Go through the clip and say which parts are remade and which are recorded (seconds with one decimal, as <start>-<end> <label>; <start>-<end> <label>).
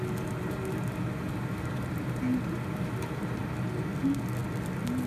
0.0-5.1 recorded